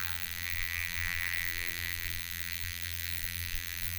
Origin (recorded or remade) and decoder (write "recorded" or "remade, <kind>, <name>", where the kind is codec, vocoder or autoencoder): remade, vocoder, BigVGAN v2